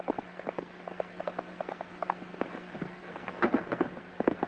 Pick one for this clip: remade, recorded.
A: remade